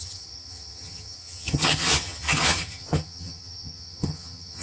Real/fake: fake